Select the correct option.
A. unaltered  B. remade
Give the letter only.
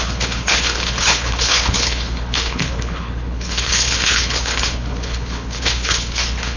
B